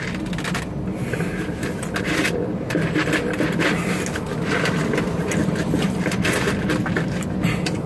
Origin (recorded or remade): recorded